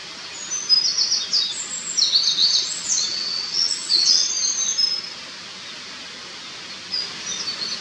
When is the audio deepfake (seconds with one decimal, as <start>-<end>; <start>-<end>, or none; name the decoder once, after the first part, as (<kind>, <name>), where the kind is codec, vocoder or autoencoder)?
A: 2.4-4.3 (vocoder, WaveNeXt)